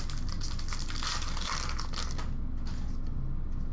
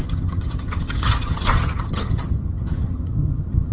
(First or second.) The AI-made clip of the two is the second